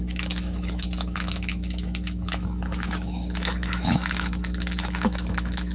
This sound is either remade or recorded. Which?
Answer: remade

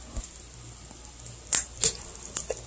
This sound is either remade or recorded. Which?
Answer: recorded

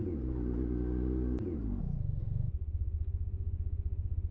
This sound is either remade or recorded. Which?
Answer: recorded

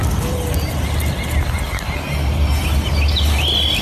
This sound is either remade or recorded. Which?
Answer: recorded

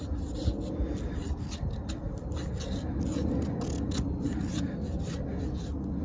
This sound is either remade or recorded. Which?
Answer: recorded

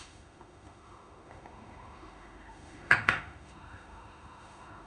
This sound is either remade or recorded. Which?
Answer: remade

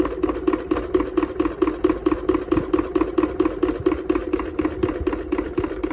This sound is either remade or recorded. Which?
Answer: recorded